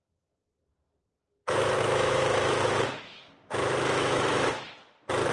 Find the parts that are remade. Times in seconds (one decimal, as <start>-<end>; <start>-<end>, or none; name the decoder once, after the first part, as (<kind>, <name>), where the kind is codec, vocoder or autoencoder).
1.4-4.6 (autoencoder, DAC-VAE)